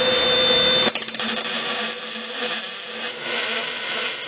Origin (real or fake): real